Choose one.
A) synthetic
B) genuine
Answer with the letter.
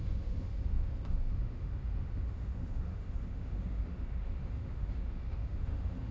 A